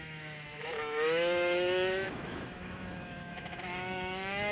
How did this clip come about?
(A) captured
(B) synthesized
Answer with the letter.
B